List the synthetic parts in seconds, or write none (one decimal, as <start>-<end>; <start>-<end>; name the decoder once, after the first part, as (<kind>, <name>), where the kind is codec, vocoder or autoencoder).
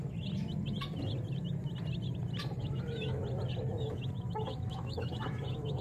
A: 2.6-3.2 (autoencoder, DAC-VAE); 3.8-5.8